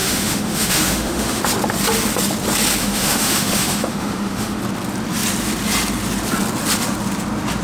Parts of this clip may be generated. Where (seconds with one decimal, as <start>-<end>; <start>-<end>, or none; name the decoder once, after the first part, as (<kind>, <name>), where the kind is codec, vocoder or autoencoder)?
0.0-1.4 (autoencoder, DAC-VAE); 2.8-4.6